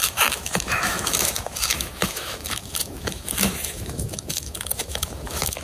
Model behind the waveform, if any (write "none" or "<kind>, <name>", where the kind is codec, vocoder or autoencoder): autoencoder, DAC-VAE